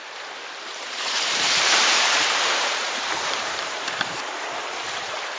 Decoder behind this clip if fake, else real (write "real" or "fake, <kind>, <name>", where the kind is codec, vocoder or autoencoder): fake, vocoder, BigVGAN v2